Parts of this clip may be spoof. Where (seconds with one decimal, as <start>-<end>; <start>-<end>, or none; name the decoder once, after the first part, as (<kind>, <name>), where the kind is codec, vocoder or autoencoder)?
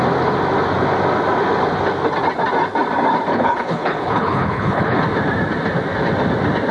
3.3-5.0 (codec, HILCodec)